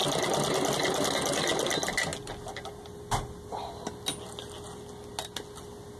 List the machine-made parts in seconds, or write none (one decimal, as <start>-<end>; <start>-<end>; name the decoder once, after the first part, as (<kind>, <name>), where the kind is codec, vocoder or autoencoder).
none